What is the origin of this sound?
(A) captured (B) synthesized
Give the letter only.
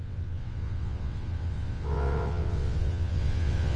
B